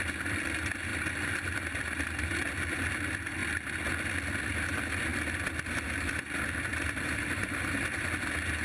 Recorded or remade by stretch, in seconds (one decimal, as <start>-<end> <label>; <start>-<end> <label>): 0.0-6.7 recorded; 6.7-8.1 remade; 8.1-8.6 recorded